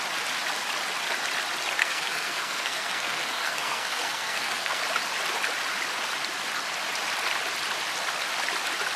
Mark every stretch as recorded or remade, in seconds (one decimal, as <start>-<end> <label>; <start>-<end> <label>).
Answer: 0.0-1.8 recorded; 1.8-4.8 remade; 4.8-9.0 recorded

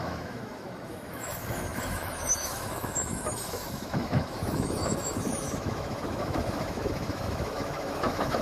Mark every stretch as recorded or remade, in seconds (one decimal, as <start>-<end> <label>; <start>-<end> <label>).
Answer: 0.0-8.4 remade

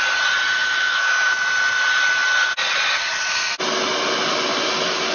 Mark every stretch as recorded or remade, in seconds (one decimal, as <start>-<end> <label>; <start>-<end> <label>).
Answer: 0.0-0.6 recorded; 0.6-1.3 remade; 1.3-5.1 recorded

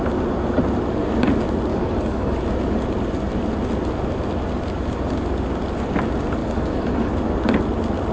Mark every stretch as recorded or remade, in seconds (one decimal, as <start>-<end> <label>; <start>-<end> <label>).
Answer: 0.0-1.7 recorded; 1.7-2.4 remade; 2.4-6.4 recorded; 6.4-7.1 remade; 7.1-8.1 recorded

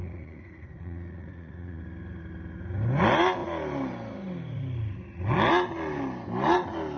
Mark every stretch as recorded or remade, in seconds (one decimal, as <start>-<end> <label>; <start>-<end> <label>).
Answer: 0.0-1.8 remade; 1.8-7.0 recorded

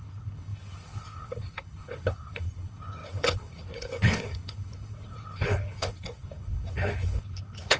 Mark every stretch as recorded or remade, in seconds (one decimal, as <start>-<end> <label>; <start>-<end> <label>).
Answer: 0.0-7.8 remade

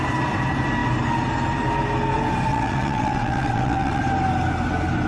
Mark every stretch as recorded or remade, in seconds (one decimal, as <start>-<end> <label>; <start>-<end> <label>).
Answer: 0.0-2.5 recorded; 2.5-4.0 remade; 4.0-5.1 recorded

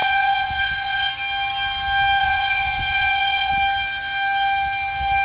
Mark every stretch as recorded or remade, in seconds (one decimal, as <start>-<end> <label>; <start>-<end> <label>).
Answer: 0.0-1.1 remade; 1.1-2.2 recorded; 2.2-3.5 remade; 3.5-5.2 recorded